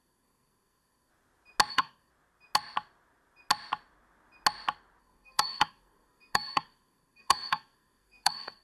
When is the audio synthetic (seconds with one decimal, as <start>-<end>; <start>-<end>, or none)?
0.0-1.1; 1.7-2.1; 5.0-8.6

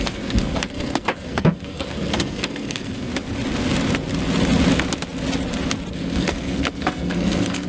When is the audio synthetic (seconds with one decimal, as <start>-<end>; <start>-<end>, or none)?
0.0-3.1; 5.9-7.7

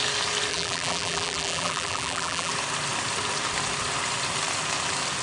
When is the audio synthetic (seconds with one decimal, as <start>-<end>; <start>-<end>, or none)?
0.5-2.5

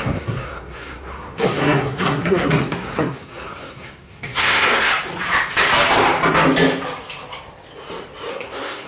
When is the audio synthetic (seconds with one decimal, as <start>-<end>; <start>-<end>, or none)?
0.0-4.9; 8.3-8.9

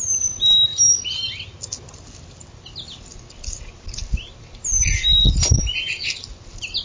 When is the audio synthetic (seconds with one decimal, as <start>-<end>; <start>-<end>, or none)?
none